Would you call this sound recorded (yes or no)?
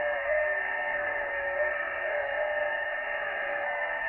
no